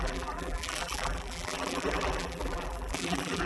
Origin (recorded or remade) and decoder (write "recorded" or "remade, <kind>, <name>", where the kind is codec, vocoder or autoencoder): remade, vocoder, BigVGAN v2